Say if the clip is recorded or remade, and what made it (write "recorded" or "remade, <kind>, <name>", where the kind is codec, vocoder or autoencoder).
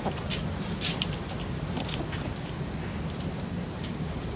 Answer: recorded